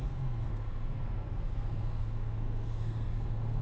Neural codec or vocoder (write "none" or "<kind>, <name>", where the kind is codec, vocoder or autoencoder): codec, SNAC